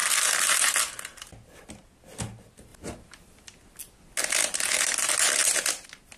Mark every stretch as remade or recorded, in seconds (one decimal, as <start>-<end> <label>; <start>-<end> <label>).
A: 0.0-6.2 recorded

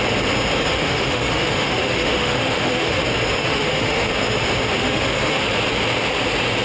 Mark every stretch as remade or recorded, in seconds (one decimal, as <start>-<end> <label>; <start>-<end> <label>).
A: 0.0-0.7 recorded; 0.7-3.0 remade; 3.0-3.4 recorded; 3.4-4.1 remade; 4.1-4.8 recorded; 4.8-5.4 remade; 5.4-6.6 recorded

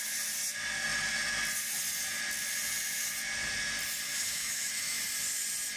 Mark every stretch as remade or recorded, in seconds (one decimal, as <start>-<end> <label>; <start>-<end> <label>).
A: 0.0-4.1 recorded; 4.1-5.0 remade; 5.0-5.8 recorded

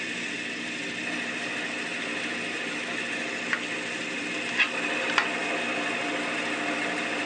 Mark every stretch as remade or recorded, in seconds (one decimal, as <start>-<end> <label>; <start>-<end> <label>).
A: 0.0-7.3 recorded

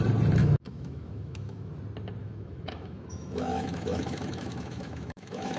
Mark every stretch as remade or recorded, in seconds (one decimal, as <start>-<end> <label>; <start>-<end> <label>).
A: 0.0-0.4 recorded; 0.4-1.7 remade; 1.7-2.2 recorded; 2.2-5.6 remade

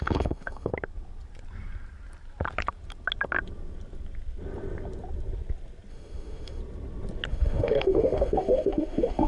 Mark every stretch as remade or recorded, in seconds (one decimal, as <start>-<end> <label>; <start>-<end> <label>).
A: 0.0-0.7 remade; 0.7-5.9 recorded; 5.9-6.6 remade; 6.6-7.3 recorded; 7.3-9.3 remade

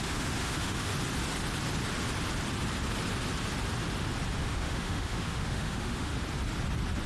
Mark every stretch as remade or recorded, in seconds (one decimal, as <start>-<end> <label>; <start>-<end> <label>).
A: 0.0-0.9 remade; 0.9-4.4 recorded; 4.4-6.1 remade; 6.1-7.1 recorded